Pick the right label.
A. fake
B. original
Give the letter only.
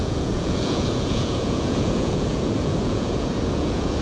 A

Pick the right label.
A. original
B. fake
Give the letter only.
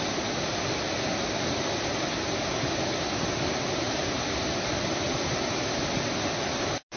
A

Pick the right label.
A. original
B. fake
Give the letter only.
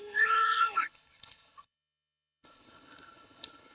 B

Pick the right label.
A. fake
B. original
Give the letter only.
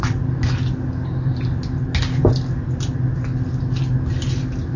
B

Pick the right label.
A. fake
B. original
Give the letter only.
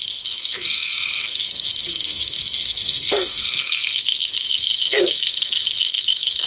A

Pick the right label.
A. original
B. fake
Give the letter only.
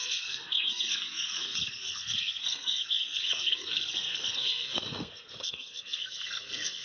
B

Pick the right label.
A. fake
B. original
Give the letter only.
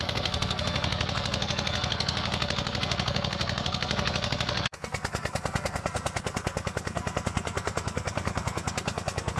A